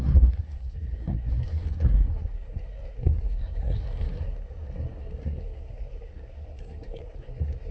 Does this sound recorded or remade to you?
remade